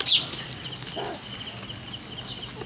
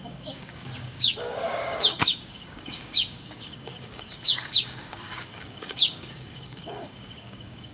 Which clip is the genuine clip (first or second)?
first